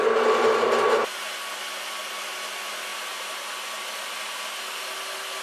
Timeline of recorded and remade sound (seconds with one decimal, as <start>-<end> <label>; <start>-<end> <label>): 0.0-2.9 recorded; 2.9-3.5 remade; 3.5-5.4 recorded